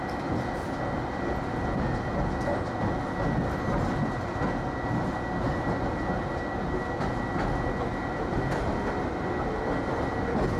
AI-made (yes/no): no